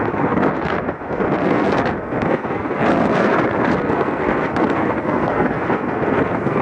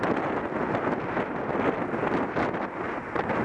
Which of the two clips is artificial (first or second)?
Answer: first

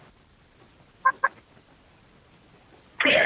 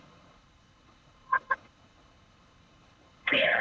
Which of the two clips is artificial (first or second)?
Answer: second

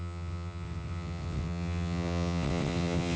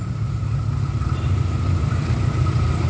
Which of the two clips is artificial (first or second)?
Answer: first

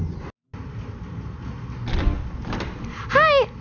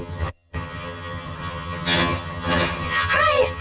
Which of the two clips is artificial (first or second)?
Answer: second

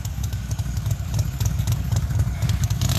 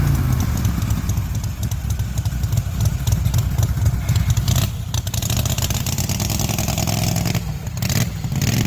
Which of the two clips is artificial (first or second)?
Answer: first